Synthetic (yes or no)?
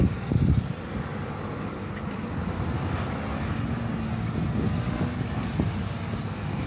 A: no